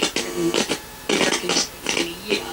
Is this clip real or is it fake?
real